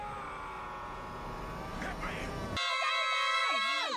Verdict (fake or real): real